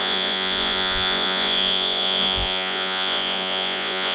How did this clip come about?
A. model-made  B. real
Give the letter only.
A